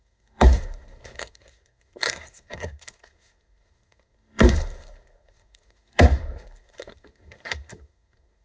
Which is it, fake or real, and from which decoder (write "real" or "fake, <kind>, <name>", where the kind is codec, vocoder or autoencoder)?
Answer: fake, codec, SNAC